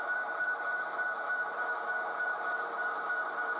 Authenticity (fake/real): fake